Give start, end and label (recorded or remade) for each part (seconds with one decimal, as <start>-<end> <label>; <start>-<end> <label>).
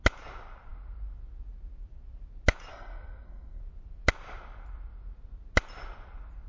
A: 0.0-2.7 recorded; 2.7-3.6 remade; 3.6-6.5 recorded